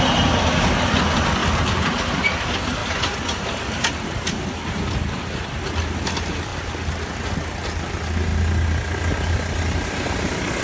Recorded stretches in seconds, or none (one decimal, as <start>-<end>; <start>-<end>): 0.0-1.4; 2.2-10.6